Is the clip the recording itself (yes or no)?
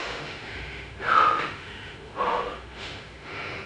no